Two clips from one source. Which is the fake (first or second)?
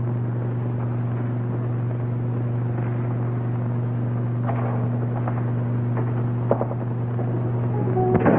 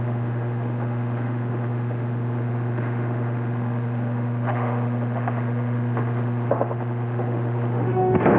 second